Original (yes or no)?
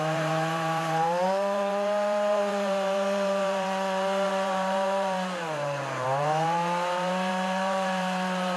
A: no